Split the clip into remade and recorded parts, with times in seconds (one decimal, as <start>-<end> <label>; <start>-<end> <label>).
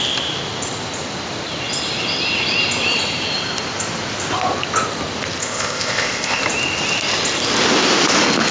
0.0-5.4 recorded; 5.4-6.4 remade; 6.4-8.5 recorded